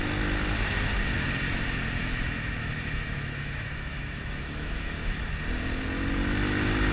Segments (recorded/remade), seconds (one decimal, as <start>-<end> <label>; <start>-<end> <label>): 0.0-2.0 recorded; 2.0-5.2 remade; 5.2-6.9 recorded